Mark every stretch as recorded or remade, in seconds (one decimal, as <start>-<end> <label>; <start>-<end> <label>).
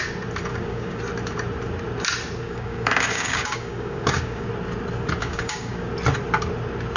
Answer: 0.0-0.5 recorded; 0.5-1.0 remade; 1.0-2.4 recorded; 2.4-4.5 remade; 4.5-5.2 recorded; 5.2-5.9 remade; 5.9-7.0 recorded